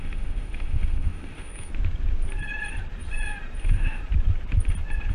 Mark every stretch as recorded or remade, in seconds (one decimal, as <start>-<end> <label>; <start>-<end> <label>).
0.0-1.7 remade; 1.7-3.6 recorded; 3.6-4.0 remade; 4.0-5.1 recorded